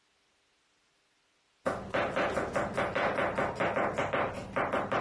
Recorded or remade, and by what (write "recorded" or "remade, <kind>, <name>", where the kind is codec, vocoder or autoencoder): recorded